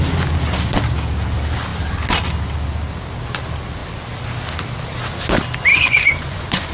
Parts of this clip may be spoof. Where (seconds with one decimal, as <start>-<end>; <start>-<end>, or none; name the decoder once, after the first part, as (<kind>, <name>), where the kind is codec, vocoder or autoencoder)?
5.7-6.7 (vocoder, Vocos)